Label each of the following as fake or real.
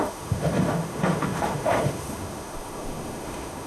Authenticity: fake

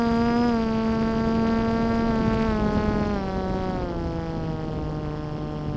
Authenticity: real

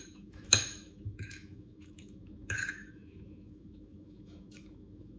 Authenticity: fake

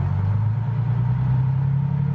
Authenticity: real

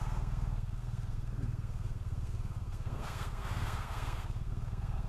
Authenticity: fake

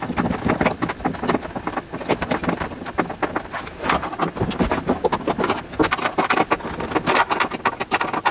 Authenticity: real